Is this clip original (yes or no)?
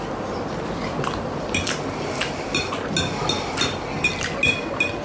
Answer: yes